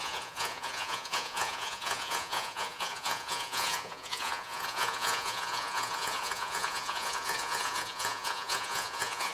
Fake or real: fake